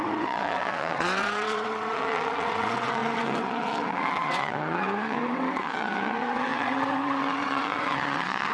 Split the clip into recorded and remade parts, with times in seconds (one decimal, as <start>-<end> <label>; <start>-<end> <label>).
0.0-8.5 remade